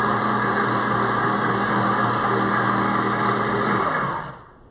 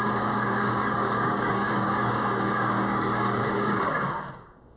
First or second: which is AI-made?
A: second